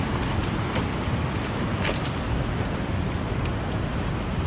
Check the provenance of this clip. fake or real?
real